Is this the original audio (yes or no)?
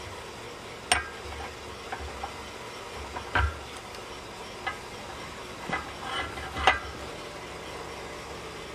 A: yes